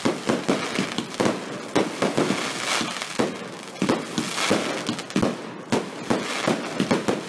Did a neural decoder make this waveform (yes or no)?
no